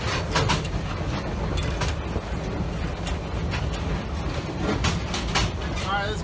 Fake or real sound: real